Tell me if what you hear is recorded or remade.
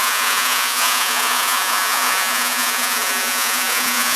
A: remade